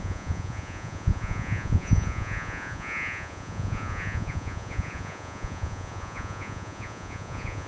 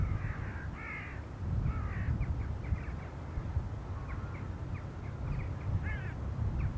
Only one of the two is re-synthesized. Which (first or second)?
first